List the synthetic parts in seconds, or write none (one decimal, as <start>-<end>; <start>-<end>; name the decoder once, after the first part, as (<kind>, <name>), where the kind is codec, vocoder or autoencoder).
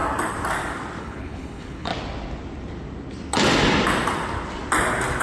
1.0-1.9 (codec, HILCodec)